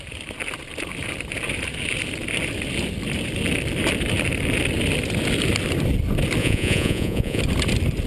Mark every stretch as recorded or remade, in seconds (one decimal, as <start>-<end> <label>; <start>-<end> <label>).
0.0-6.4 recorded; 6.4-7.4 remade; 7.4-8.1 recorded